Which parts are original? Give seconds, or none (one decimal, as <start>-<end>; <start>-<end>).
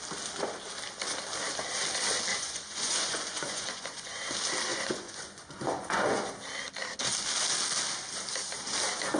0.0-2.3; 4.3-4.7; 6.3-9.2